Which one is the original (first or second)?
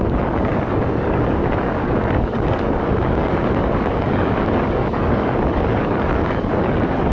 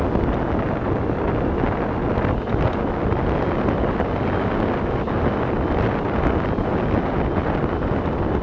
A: second